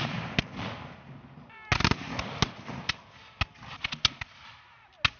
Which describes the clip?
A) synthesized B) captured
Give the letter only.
B